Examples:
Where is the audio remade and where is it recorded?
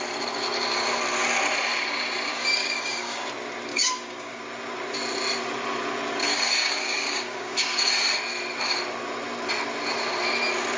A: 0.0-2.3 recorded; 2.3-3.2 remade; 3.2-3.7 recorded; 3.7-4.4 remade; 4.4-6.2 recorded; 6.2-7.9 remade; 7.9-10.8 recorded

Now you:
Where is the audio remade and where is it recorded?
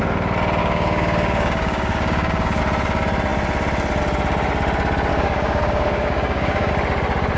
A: 0.0-0.6 recorded; 0.6-2.6 remade; 2.6-5.1 recorded; 5.1-6.7 remade; 6.7-7.4 recorded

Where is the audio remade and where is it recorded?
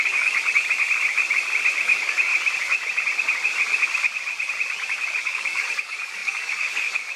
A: 0.0-0.4 remade; 0.4-1.8 recorded; 1.8-2.3 remade; 2.3-5.2 recorded; 5.2-7.2 remade